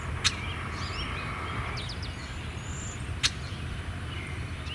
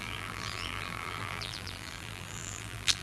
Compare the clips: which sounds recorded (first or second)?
first